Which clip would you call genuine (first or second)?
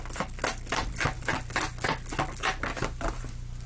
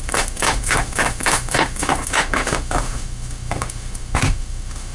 first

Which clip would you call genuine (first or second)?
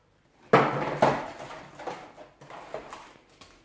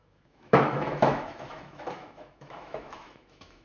first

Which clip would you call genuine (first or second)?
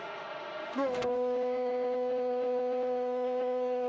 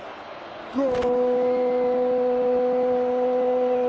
second